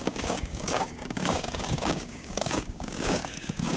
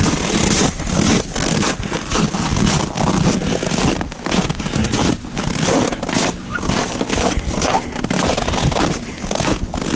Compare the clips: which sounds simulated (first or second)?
first